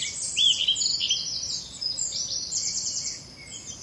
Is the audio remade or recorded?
recorded